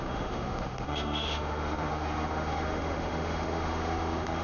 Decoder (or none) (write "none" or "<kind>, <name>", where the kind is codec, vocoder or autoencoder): autoencoder, DAC-VAE